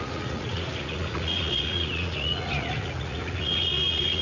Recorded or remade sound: remade